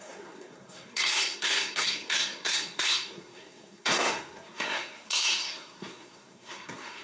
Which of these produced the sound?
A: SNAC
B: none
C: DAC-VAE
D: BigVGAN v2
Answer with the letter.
A